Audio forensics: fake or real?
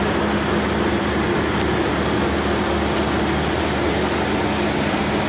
real